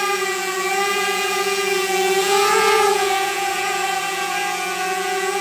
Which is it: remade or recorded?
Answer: remade